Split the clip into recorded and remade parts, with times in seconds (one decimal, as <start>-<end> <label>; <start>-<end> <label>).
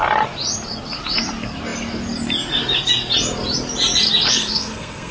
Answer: 0.0-4.3 recorded; 4.3-5.1 remade